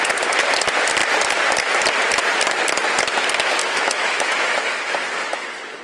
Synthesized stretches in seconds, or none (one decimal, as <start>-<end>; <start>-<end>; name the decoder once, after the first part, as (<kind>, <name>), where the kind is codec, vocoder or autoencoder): 3.6-5.8 (autoencoder, DAC-VAE)